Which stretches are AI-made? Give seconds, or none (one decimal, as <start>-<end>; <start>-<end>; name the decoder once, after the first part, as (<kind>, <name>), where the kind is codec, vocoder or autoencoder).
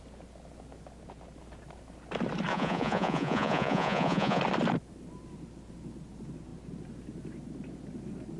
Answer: 2.5-4.4 (vocoder, Vocos)